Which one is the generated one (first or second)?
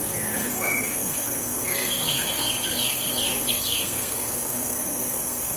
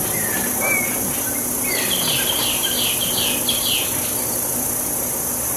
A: first